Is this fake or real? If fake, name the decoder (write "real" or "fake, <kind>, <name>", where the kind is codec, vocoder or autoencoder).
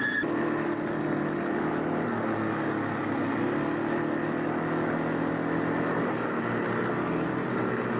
real